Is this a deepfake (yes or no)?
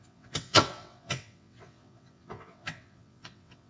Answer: yes